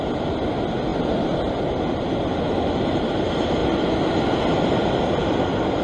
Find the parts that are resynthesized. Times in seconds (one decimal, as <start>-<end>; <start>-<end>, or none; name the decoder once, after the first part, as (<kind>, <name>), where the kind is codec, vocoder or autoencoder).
none